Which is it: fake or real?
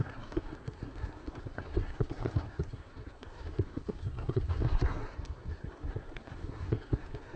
fake